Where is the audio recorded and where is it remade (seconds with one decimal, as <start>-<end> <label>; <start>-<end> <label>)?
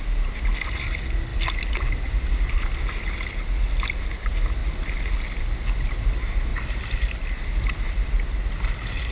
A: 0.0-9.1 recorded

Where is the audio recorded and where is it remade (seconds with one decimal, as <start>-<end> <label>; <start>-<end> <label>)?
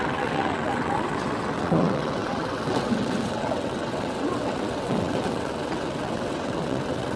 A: 0.0-7.2 remade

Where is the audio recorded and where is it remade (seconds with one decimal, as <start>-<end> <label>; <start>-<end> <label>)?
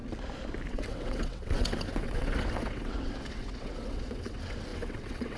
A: 0.0-0.7 recorded; 0.7-5.4 remade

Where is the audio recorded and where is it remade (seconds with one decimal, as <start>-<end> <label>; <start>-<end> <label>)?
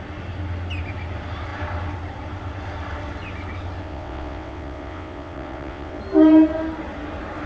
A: 0.0-3.8 recorded; 3.8-6.0 remade; 6.0-7.5 recorded